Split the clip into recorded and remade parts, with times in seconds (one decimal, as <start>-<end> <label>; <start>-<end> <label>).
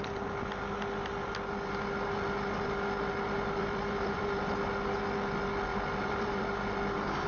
0.0-3.6 recorded; 3.6-4.5 remade; 4.5-5.7 recorded; 5.7-6.4 remade; 6.4-7.3 recorded